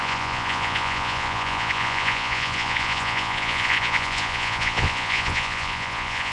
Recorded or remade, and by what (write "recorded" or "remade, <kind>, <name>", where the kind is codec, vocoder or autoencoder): remade, vocoder, Vocos